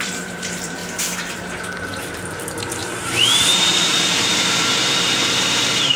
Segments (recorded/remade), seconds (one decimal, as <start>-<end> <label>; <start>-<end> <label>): 0.0-0.8 remade; 0.8-1.8 recorded; 1.8-6.0 remade